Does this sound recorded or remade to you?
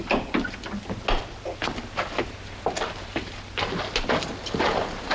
recorded